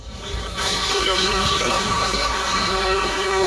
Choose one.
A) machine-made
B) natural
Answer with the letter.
A